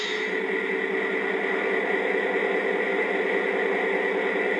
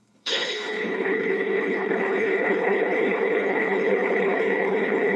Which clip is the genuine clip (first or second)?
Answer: first